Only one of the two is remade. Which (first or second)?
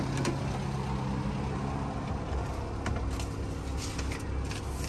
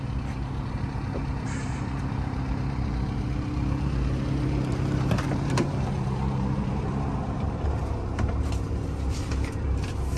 second